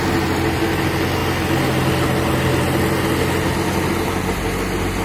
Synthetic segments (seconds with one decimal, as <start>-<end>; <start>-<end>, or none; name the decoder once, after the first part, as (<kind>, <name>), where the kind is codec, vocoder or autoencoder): none

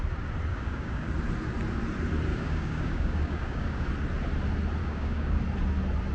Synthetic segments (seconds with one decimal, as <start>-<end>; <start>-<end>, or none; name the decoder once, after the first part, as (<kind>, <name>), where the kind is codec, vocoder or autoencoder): 0.5-1.1 (codec, DAC); 2.3-3.9; 4.8-5.4

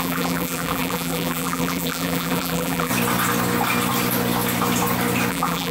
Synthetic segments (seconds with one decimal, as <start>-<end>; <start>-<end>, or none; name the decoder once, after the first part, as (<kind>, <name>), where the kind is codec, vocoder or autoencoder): 0.0-2.9 (vocoder, BigVGAN v2); 5.3-5.7

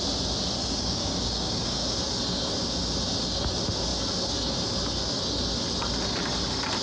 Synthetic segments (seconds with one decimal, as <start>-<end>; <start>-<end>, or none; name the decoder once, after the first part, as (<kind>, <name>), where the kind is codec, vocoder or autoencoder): 0.6-2.0 (codec, DAC)

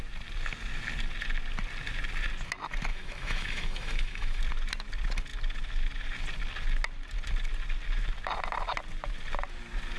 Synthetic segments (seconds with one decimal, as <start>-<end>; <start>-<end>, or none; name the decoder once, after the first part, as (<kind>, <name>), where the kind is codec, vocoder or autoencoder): 2.9-4.4 (autoencoder, DAC-VAE)

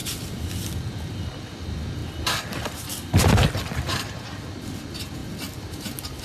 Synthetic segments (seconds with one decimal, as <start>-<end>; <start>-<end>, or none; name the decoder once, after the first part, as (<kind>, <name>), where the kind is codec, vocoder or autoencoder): 0.0-0.6 (vocoder, BigVGAN v2)